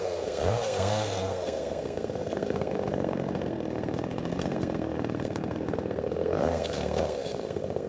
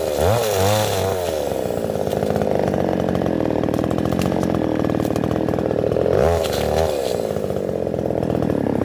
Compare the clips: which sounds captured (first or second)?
second